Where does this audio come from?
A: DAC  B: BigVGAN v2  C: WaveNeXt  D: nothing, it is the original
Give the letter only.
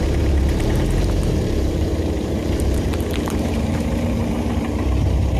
B